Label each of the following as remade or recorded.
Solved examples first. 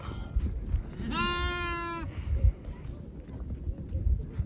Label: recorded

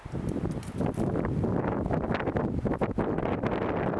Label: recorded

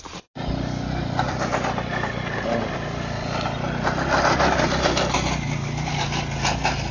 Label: recorded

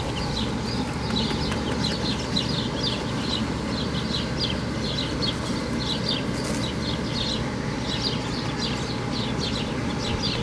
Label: recorded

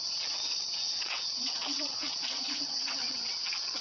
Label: remade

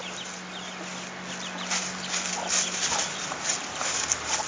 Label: recorded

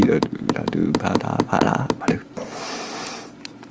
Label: recorded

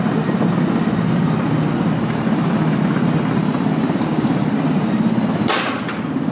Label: recorded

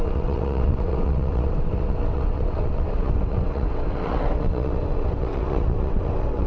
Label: remade